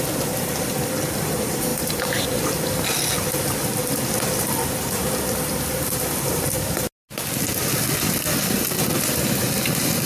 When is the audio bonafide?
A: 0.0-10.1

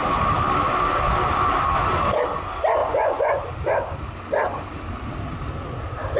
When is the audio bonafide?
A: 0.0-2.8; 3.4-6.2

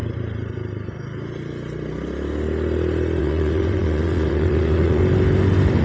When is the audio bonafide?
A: 0.0-3.2; 5.0-5.8